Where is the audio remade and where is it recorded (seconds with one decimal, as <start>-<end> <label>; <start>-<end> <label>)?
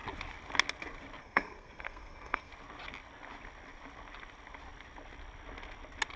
0.0-1.2 recorded; 1.2-2.5 remade; 2.5-6.2 recorded